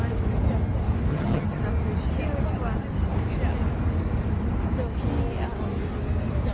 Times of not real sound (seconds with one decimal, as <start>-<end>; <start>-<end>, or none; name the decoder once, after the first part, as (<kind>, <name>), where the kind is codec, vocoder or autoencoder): 1.1-1.6 (vocoder, HiFi-GAN)